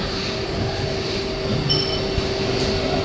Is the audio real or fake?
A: real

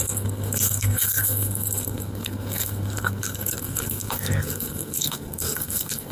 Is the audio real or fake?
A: fake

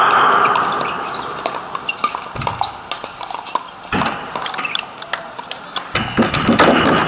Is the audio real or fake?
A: real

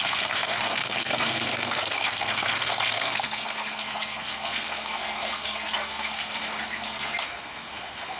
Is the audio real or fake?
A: fake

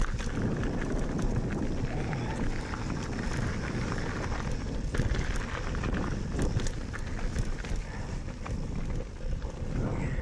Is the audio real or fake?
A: real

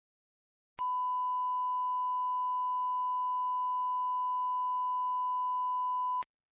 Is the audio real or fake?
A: real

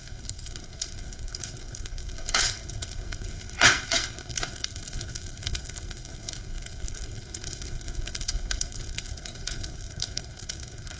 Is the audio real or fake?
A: fake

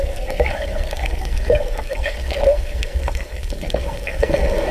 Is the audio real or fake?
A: fake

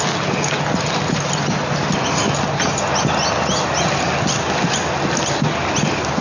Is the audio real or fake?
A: real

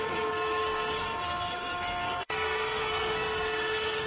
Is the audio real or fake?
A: fake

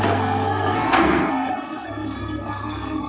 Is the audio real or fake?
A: fake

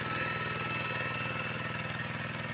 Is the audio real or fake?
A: real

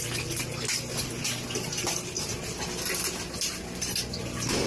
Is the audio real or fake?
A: real